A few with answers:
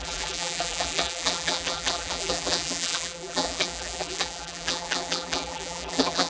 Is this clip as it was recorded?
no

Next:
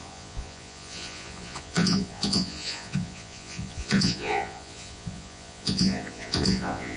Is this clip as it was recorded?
no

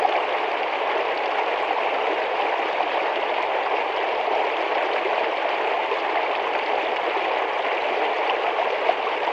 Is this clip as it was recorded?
yes